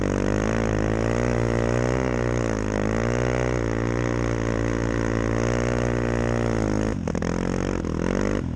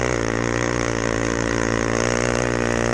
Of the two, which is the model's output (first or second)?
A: second